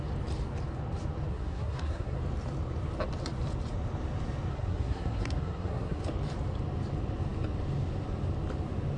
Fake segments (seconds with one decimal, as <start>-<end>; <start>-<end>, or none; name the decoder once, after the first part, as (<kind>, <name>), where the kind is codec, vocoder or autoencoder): 1.3-2.2 (codec, SNAC); 4.5-6.0